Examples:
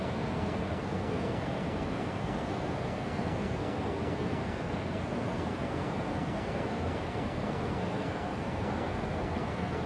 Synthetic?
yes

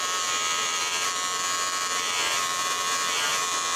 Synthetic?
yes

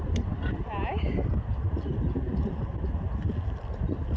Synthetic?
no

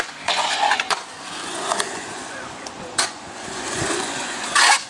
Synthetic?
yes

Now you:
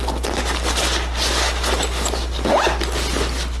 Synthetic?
no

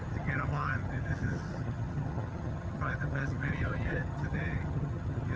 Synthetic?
yes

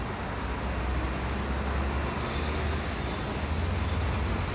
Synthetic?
no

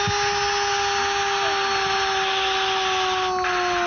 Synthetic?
no